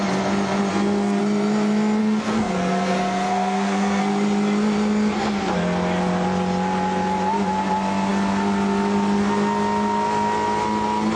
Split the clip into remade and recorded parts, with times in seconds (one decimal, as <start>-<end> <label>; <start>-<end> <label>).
0.0-0.7 recorded; 0.7-1.2 remade; 1.2-2.0 recorded; 2.0-4.0 remade; 4.0-11.2 recorded